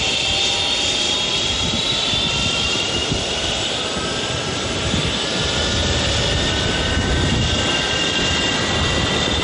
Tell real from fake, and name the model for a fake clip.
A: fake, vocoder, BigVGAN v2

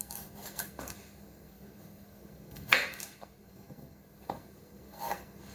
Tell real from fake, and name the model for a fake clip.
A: fake, codec, SNAC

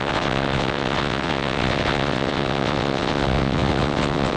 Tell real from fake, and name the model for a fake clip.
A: fake, vocoder, WaveNeXt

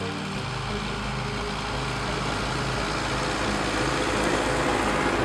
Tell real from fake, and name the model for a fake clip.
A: real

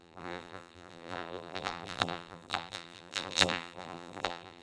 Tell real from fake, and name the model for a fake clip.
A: fake, vocoder, BigVGAN v2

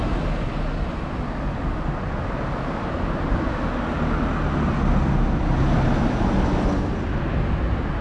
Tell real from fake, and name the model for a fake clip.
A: real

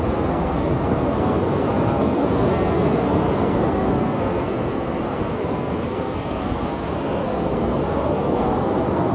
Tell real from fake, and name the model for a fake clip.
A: fake, codec, SNAC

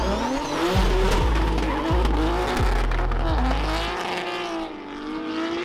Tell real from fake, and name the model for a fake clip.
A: real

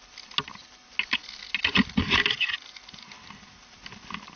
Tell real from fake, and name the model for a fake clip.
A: real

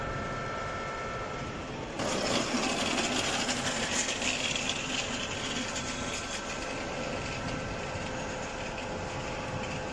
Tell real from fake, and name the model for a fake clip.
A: real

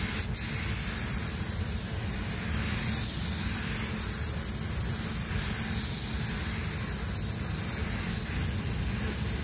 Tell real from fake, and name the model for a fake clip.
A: real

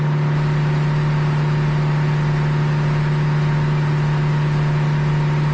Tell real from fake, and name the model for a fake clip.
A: real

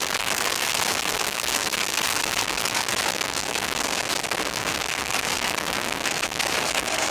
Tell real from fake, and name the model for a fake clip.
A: fake, codec, DAC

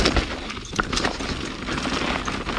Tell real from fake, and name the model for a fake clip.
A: real